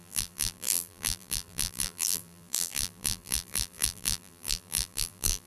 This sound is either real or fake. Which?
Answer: fake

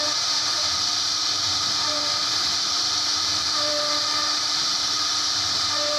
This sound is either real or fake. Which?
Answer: fake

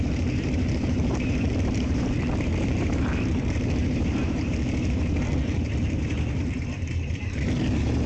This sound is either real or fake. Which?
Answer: fake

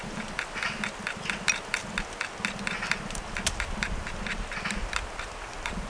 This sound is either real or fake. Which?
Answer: real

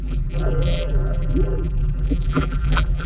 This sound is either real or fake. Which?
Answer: fake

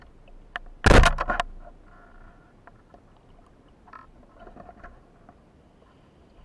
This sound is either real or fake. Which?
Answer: real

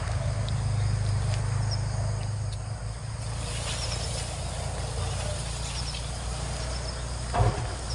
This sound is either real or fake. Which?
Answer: fake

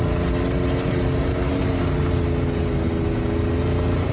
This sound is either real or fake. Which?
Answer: real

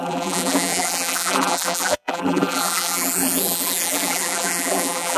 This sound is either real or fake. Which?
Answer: fake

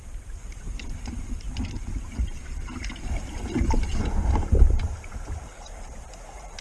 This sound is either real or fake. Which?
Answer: fake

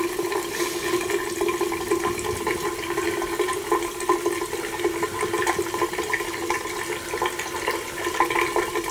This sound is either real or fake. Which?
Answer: real